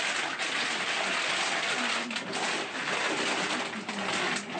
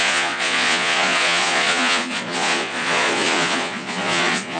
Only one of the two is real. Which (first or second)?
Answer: first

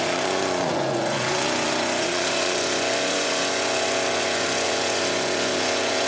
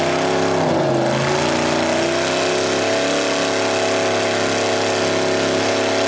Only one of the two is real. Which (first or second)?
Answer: second